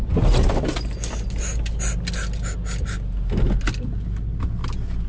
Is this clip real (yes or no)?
yes